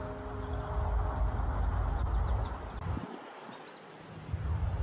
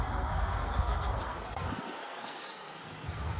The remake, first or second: second